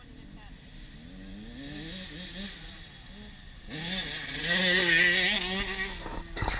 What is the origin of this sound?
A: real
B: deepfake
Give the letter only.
A